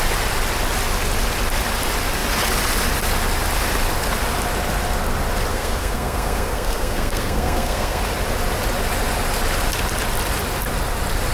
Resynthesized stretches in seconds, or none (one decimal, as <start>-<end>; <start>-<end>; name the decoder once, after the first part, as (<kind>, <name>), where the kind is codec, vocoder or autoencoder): 5.5-8.0 (codec, SNAC)